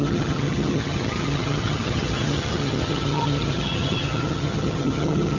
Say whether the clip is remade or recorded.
remade